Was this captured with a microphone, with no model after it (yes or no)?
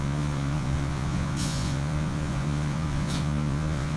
no